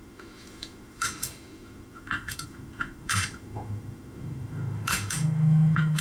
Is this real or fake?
fake